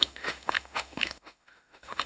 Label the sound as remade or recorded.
remade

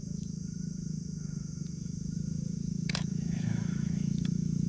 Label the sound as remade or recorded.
remade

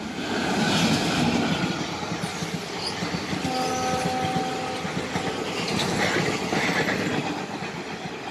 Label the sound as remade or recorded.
recorded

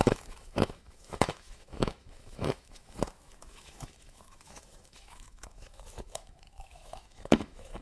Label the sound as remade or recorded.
remade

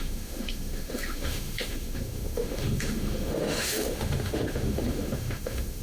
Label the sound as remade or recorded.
remade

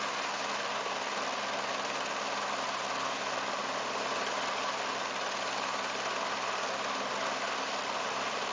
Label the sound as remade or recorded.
recorded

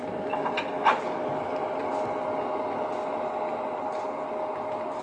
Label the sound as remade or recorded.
recorded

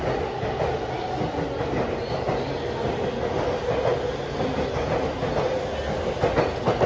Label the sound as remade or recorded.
recorded